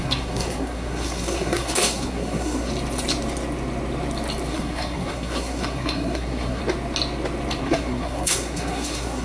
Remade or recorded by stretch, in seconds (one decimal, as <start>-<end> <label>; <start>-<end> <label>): 0.0-2.7 remade; 2.7-4.5 recorded; 4.5-6.6 remade; 6.6-7.6 recorded; 7.6-9.2 remade